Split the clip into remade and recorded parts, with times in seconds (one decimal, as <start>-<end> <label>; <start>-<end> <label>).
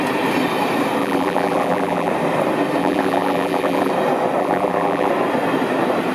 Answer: 0.0-1.0 recorded; 1.0-2.1 remade; 2.1-2.8 recorded; 2.8-3.9 remade; 3.9-4.4 recorded; 4.4-5.1 remade; 5.1-6.1 recorded